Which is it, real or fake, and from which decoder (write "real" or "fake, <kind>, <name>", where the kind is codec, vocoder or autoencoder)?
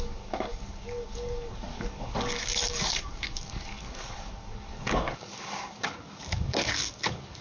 fake, codec, DAC